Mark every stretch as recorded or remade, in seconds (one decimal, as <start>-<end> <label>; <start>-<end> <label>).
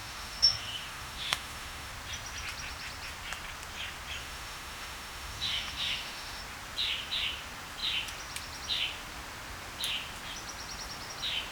0.0-1.9 remade; 1.9-4.2 recorded; 4.2-6.4 remade; 6.4-11.5 recorded